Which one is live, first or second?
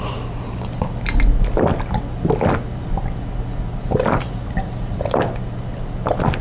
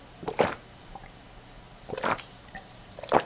first